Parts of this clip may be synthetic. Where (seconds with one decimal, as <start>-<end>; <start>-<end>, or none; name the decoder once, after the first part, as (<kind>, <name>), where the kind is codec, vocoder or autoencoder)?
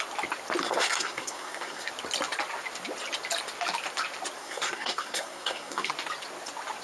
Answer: 0.6-1.9 (codec, SNAC); 4.4-5.9